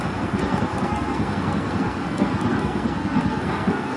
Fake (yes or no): yes